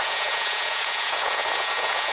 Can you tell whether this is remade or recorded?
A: remade